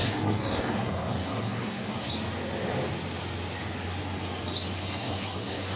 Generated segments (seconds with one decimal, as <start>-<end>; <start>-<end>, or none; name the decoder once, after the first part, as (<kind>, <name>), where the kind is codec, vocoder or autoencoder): 0.0-2.1 (codec, SNAC); 4.8-5.8